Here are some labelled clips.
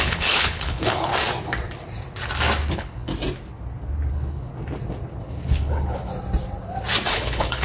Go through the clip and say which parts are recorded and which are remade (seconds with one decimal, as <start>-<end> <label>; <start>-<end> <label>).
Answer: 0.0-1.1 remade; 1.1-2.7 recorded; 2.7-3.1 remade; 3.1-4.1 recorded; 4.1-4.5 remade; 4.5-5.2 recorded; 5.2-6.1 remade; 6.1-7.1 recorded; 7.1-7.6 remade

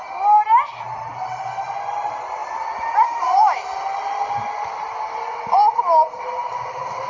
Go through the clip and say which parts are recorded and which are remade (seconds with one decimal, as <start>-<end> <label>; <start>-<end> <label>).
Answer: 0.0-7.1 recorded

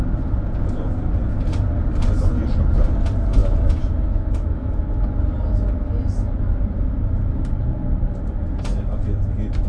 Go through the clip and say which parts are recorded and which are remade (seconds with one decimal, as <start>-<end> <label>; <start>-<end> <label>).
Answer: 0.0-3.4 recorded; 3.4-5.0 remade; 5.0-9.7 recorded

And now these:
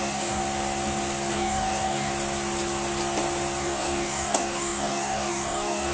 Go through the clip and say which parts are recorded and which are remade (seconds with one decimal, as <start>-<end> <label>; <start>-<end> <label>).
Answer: 0.0-0.4 remade; 0.4-1.3 recorded; 1.3-2.1 remade; 2.1-3.6 recorded; 3.6-5.9 remade

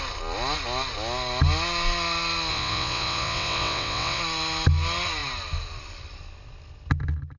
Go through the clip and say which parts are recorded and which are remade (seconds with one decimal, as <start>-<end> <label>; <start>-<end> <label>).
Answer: 0.0-2.5 recorded; 2.5-4.2 remade; 4.2-7.4 recorded

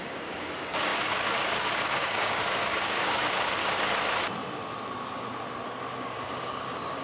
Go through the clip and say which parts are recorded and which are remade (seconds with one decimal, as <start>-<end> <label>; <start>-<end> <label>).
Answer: 0.0-3.6 remade; 3.6-6.0 recorded; 6.0-7.0 remade